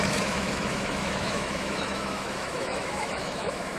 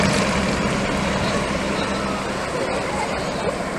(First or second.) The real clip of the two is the second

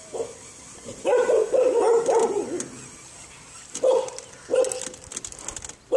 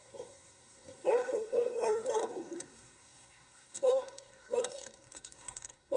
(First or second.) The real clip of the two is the first